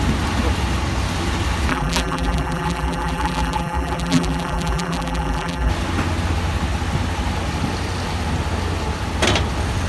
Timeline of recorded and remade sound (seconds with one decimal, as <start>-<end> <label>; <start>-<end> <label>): 0.0-1.7 recorded; 1.7-5.7 remade; 5.7-9.9 recorded